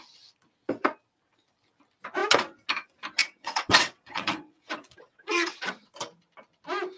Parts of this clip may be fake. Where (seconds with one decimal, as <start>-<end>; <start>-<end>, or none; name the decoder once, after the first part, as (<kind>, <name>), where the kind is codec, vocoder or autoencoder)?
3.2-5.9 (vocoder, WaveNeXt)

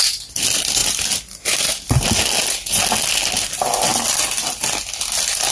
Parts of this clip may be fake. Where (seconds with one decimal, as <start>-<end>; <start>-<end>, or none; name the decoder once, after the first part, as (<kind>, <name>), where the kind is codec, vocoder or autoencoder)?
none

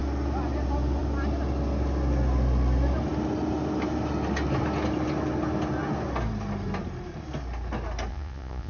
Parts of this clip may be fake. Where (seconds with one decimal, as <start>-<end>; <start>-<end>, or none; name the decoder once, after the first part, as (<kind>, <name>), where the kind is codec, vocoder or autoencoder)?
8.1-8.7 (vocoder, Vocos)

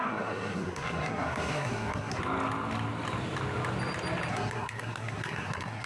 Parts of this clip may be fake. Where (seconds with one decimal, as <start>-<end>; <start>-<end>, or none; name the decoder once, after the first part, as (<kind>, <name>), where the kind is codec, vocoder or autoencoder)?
0.0-2.2 (codec, SNAC); 4.3-5.9

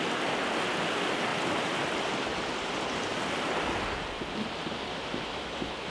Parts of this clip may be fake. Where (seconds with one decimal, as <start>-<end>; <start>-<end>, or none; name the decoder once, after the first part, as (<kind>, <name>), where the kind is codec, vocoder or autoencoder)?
4.9-5.9 (autoencoder, DAC-VAE)

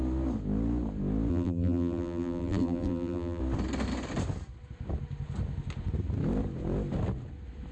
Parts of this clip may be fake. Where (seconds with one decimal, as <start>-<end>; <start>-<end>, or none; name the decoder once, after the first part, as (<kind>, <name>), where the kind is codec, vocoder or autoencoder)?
1.3-3.4 (vocoder, BigVGAN v2)